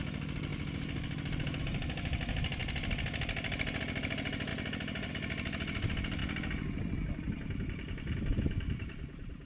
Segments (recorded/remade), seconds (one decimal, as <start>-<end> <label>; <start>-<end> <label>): 0.0-9.5 recorded

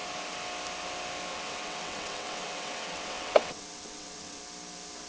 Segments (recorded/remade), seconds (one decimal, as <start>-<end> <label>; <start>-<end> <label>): 0.0-1.3 recorded; 1.3-4.4 remade; 4.4-5.1 recorded

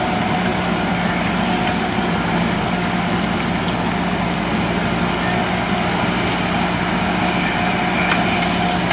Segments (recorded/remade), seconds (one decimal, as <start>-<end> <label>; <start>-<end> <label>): 0.0-8.9 recorded

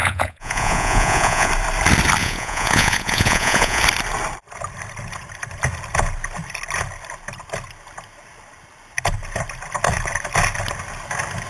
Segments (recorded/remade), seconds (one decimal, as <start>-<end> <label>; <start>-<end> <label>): 0.0-1.5 remade; 1.5-2.2 recorded; 2.2-3.8 remade; 3.8-11.5 recorded

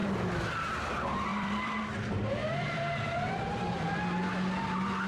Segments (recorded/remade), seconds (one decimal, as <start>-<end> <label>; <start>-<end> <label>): 0.0-0.9 remade; 0.9-1.3 recorded; 1.3-1.8 remade; 1.8-2.4 recorded; 2.4-4.0 remade; 4.0-5.1 recorded

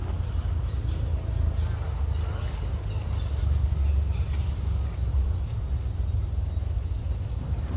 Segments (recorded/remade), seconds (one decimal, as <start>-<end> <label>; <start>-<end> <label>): 0.0-7.8 recorded

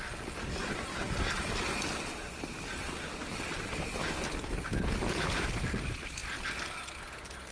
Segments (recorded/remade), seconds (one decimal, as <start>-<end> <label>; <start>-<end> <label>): 0.0-7.5 recorded

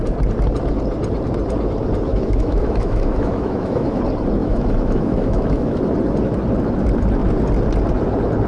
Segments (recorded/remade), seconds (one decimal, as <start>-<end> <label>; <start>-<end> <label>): 0.0-2.1 recorded; 2.1-4.0 remade; 4.0-4.4 recorded; 4.4-5.8 remade; 5.8-8.5 recorded